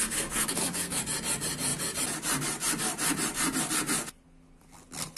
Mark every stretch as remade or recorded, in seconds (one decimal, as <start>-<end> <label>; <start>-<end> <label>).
0.0-1.0 remade; 1.0-5.2 recorded